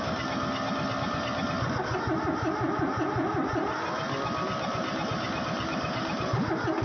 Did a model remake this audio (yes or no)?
no